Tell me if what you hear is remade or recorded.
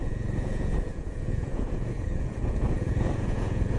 remade